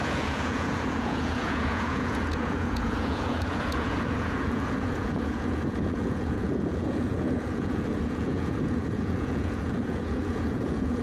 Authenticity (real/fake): fake